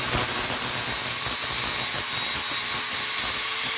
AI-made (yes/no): no